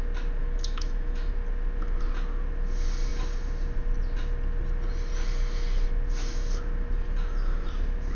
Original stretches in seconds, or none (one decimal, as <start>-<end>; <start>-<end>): 0.0-0.4; 1.3-8.2